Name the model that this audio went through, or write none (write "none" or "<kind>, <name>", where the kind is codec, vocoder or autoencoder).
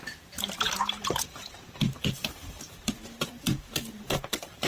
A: vocoder, BigVGAN v2